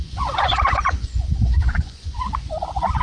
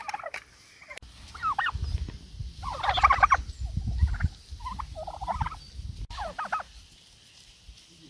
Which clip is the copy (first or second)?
first